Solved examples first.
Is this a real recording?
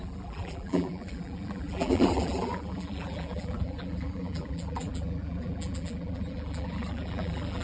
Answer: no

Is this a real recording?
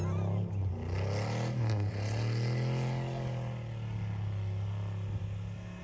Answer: yes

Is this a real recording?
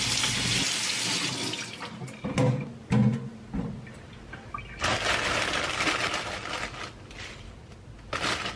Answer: yes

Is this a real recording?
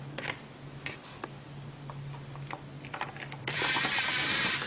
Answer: no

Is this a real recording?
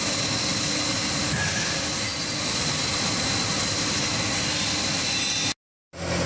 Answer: yes